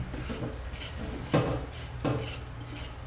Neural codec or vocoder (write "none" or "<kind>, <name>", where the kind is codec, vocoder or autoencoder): none